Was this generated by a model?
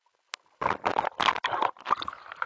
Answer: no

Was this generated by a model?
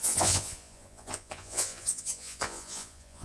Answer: yes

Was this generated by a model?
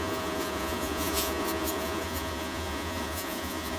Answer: yes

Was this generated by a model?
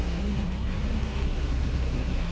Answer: yes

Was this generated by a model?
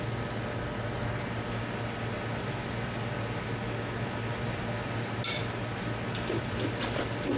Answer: no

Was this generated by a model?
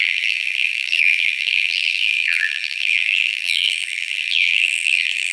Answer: yes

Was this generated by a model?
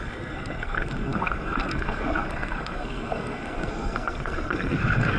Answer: yes